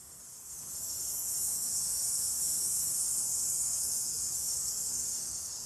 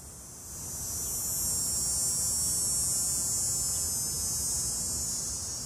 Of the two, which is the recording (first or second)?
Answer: second